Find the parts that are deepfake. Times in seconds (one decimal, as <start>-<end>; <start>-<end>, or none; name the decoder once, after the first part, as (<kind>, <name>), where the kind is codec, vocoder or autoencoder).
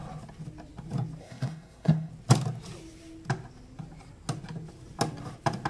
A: 1.2-2.1 (codec, SNAC)